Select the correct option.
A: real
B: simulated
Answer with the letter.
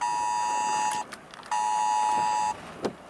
A